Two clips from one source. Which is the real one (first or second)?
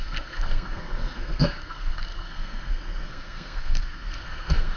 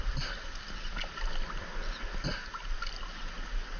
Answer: second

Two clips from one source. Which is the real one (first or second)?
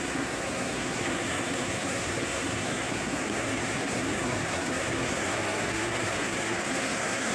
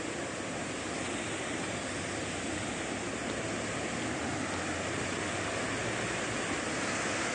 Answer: second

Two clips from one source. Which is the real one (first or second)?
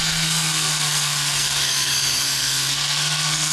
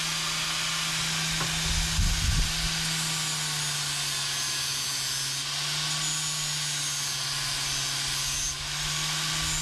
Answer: second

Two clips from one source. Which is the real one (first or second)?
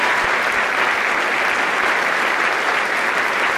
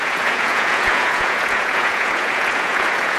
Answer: first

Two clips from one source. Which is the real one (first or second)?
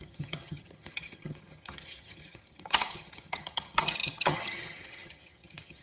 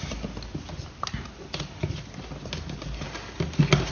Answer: second